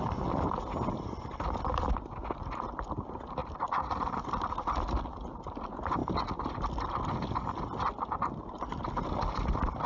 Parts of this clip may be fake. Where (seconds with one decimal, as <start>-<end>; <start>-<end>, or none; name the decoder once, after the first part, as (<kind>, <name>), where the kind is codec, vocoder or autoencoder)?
none